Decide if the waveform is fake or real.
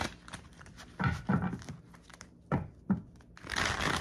real